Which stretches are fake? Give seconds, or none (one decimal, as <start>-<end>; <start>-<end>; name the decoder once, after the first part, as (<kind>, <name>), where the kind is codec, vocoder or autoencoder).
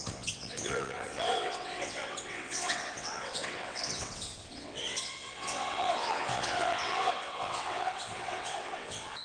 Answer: 0.0-9.2 (vocoder, WaveNeXt)